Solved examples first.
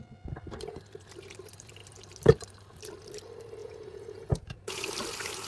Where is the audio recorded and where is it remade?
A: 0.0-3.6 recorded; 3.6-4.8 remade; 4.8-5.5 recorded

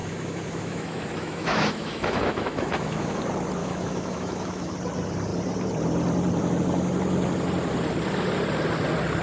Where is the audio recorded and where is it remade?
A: 0.0-3.2 remade; 3.2-3.6 recorded; 3.6-4.7 remade; 4.7-9.2 recorded

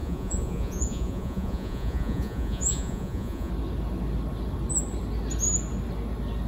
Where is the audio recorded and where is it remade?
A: 0.0-3.5 remade; 3.5-6.5 recorded

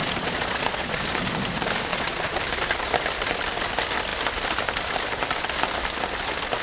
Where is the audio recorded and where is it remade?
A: 0.0-1.0 remade; 1.0-1.9 recorded; 1.9-2.4 remade; 2.4-6.6 recorded

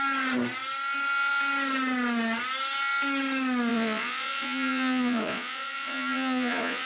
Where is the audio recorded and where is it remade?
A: 0.0-3.7 recorded; 3.7-6.9 remade

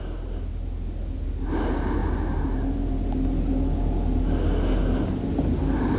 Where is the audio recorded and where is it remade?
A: 0.0-6.0 recorded

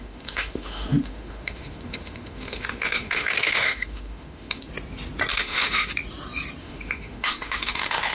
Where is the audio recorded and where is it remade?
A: 0.0-4.7 remade; 4.7-5.3 recorded; 5.3-5.9 remade; 5.9-6.6 recorded; 6.6-8.1 remade

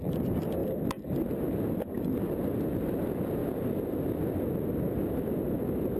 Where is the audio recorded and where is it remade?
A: 0.0-6.0 recorded